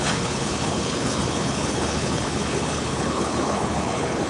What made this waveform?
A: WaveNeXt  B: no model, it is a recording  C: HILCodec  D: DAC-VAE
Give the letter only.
C